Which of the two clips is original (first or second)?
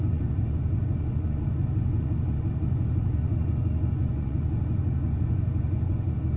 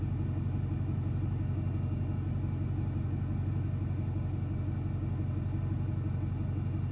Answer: second